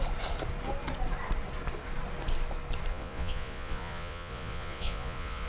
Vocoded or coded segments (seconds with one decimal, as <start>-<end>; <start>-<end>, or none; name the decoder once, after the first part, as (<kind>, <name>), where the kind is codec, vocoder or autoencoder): 2.9-5.5 (vocoder, Vocos)

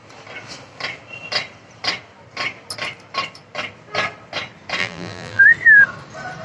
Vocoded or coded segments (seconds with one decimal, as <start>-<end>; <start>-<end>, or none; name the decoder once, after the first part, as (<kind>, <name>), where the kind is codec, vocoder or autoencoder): 4.8-5.4 (vocoder, BigVGAN v2)

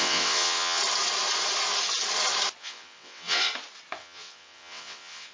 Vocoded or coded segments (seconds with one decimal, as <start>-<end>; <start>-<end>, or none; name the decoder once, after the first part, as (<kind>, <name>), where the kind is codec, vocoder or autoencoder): 0.0-0.8 (vocoder, WaveNeXt); 2.6-3.5; 4.0-5.3

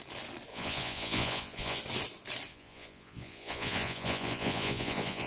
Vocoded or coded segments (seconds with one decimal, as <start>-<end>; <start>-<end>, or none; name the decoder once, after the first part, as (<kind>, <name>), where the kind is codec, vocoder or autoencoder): 0.5-1.8 (vocoder, Vocos); 2.5-5.3

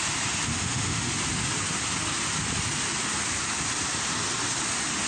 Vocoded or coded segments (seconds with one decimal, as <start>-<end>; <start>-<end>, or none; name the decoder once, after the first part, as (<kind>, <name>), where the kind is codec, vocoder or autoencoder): 0.5-1.1 (autoencoder, DAC-VAE)

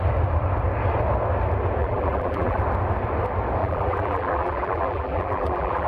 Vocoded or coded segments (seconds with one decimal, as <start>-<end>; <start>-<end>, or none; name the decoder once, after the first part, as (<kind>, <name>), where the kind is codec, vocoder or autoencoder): 1.8-2.6 (vocoder, BigVGAN v2); 3.6-5.9

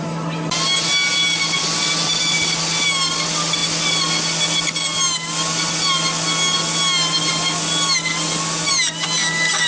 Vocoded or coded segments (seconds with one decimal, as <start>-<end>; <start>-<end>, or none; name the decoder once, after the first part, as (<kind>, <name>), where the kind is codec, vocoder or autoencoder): none

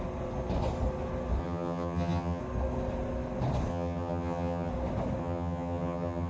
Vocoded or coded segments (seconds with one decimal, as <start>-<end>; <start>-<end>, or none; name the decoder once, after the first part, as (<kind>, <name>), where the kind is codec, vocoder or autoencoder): 1.4-2.4 (vocoder, HiFi-GAN); 3.7-4.7; 5.2-6.3